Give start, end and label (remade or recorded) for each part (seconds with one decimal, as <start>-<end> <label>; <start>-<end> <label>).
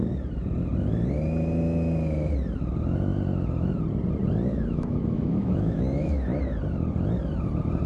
0.0-4.5 recorded; 4.5-6.4 remade; 6.4-7.9 recorded